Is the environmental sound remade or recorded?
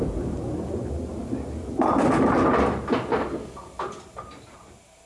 recorded